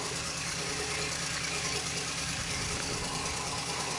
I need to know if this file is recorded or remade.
remade